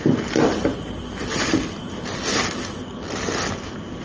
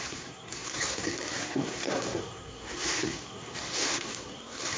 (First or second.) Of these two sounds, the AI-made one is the second